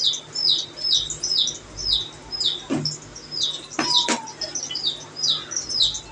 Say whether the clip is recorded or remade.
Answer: recorded